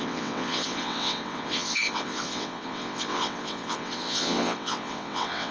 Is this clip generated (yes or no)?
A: yes